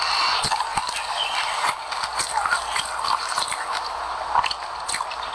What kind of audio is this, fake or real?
real